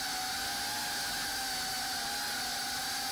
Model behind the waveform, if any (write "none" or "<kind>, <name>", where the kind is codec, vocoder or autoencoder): none